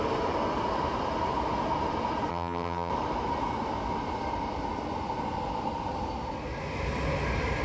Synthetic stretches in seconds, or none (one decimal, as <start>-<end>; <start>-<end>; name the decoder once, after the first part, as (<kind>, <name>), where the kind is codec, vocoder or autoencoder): 2.3-2.9 (vocoder, HiFi-GAN)